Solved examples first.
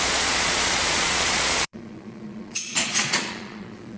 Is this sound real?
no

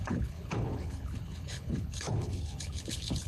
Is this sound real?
no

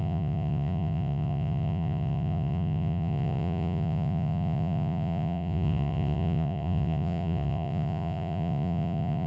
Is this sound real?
no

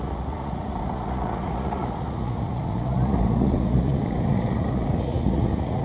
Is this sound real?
no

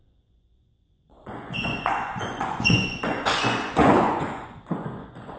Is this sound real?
no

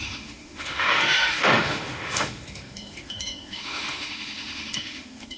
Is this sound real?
no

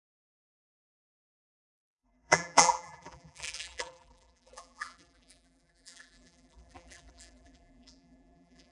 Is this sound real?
no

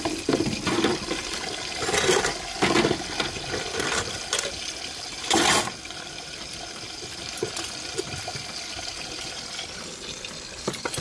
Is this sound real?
yes